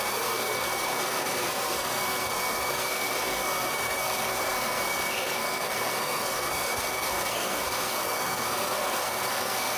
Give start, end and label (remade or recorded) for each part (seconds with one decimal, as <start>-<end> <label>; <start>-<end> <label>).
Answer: 0.0-9.8 remade